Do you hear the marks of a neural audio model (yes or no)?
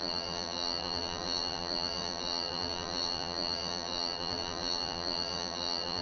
yes